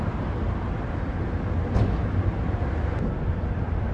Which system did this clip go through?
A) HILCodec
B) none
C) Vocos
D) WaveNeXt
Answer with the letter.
B